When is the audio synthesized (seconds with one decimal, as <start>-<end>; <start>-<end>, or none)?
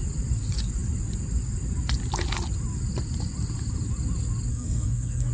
4.5-5.3